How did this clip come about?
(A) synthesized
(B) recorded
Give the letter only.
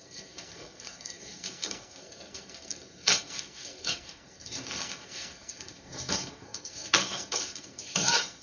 A